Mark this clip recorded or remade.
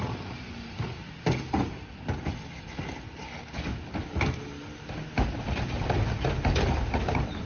recorded